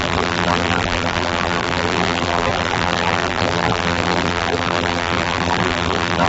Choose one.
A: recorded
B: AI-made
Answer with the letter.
B